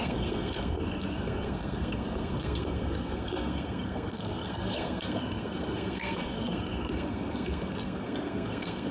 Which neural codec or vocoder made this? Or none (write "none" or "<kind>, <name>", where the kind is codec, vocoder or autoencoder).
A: codec, SNAC